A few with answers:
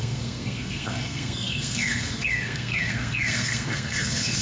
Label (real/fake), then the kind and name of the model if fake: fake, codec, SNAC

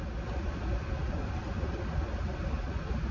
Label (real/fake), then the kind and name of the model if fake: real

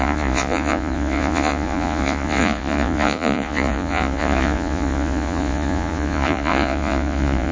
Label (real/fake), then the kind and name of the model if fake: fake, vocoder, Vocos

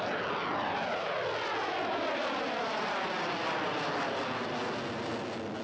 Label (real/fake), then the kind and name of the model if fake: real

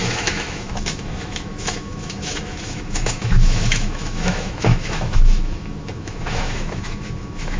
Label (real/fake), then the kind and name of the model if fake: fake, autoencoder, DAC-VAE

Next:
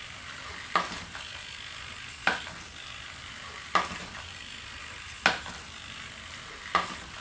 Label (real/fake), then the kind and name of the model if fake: real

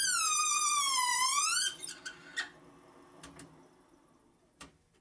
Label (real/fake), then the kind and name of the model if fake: real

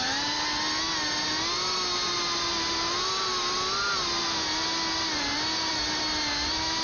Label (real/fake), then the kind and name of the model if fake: real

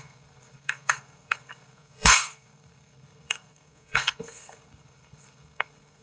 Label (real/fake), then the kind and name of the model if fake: fake, codec, SNAC